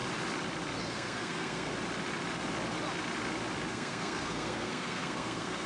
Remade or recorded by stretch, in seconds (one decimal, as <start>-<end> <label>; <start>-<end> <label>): 0.0-0.8 recorded; 0.8-1.7 remade; 1.7-3.7 recorded; 3.7-5.7 remade